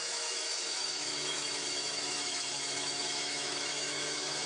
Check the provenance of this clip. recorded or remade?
remade